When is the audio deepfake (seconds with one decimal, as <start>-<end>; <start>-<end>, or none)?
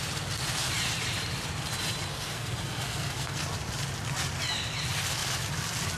2.1-3.4